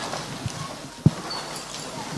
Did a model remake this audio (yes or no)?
no